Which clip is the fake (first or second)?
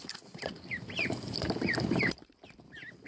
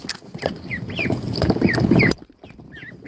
first